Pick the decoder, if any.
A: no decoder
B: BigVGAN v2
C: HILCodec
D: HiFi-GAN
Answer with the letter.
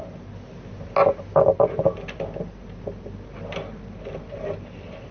A